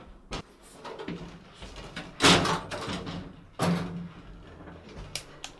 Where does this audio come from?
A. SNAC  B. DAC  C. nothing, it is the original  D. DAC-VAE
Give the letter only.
C